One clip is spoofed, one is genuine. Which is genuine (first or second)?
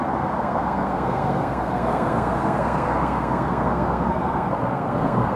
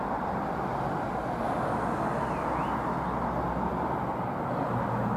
second